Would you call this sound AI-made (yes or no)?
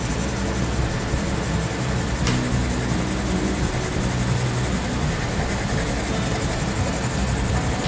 no